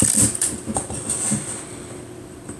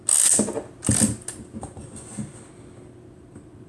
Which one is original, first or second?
second